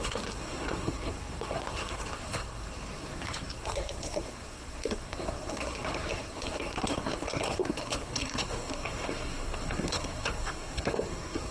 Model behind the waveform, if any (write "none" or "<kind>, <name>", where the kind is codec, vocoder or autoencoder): codec, SNAC